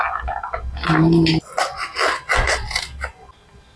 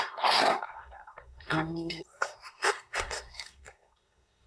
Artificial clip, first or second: second